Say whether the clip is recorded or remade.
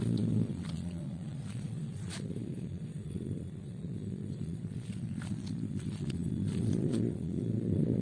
remade